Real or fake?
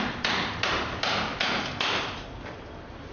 real